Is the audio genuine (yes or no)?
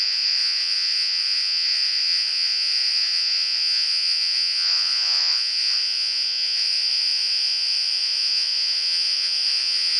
no